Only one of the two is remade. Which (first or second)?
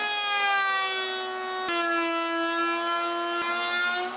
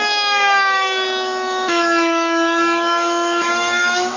second